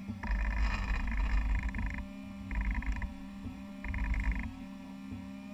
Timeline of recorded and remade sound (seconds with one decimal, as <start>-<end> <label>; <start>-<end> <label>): 0.0-1.2 remade; 1.2-3.1 recorded; 3.1-3.7 remade; 3.7-5.5 recorded